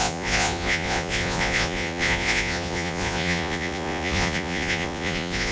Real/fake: fake